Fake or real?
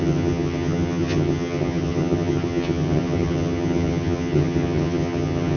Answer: fake